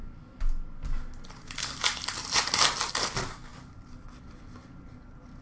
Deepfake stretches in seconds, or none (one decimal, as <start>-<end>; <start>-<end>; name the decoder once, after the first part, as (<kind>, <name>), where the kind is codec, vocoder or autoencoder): none